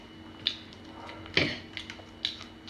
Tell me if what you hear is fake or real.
real